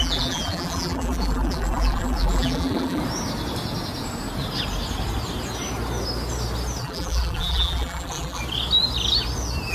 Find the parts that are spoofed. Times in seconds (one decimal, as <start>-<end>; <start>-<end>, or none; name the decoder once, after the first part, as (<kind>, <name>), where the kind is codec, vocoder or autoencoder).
0.0-3.0 (vocoder, BigVGAN v2); 6.8-8.4